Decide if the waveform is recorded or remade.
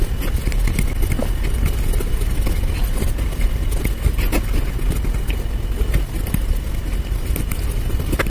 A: recorded